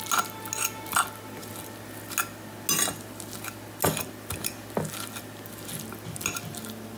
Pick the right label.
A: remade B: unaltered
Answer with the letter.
B